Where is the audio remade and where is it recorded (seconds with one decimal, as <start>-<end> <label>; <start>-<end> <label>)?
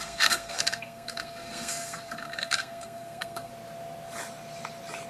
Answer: 0.0-3.5 remade; 3.5-5.1 recorded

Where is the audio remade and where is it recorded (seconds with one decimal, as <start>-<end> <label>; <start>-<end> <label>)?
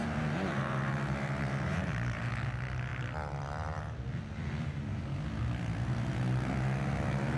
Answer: 0.0-2.3 remade; 2.3-7.4 recorded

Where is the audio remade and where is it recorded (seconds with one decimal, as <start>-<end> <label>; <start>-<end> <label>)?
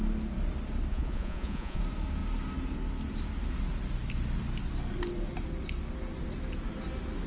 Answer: 0.0-0.9 recorded; 0.9-1.8 remade; 1.8-7.3 recorded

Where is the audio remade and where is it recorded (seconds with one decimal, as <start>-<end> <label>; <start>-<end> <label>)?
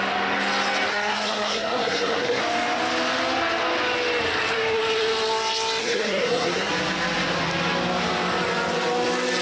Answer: 0.0-0.9 recorded; 0.9-2.4 remade; 2.4-5.8 recorded; 5.8-6.7 remade; 6.7-9.4 recorded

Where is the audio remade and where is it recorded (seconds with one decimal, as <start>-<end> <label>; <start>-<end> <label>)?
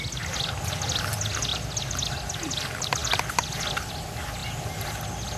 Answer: 0.0-1.5 recorded; 1.5-2.0 remade; 2.0-4.4 recorded; 4.4-5.0 remade; 5.0-5.4 recorded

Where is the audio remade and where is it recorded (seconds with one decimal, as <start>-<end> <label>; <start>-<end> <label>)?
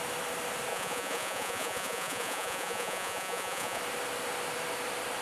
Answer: 0.0-0.7 recorded; 0.7-3.8 remade; 3.8-5.2 recorded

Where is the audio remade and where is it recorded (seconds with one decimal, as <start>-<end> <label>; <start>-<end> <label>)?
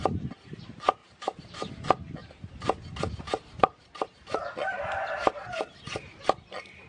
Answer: 0.0-1.0 recorded; 1.0-1.7 remade; 1.7-2.2 recorded; 2.2-4.8 remade; 4.8-6.9 recorded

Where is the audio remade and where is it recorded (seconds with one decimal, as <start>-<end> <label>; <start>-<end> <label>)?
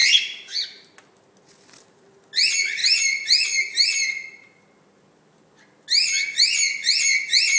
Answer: 0.0-7.6 recorded